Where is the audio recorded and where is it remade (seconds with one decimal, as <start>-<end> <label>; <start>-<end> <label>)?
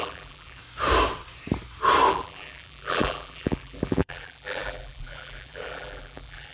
0.0-0.6 remade; 0.6-2.1 recorded; 2.1-6.5 remade